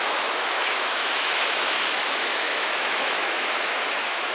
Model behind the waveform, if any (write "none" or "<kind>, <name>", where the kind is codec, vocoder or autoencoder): autoencoder, DAC-VAE